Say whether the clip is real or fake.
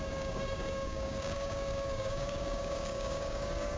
fake